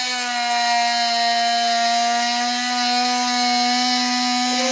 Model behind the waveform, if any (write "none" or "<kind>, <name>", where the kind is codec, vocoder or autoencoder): none